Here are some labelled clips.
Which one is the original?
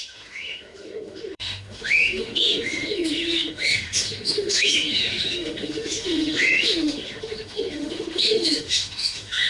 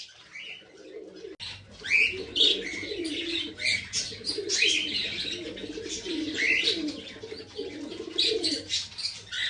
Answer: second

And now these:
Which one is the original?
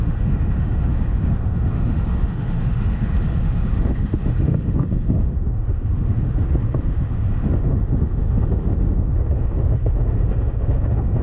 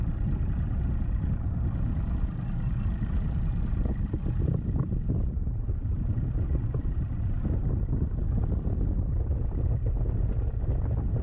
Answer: second